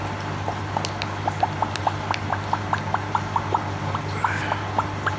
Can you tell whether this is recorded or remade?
recorded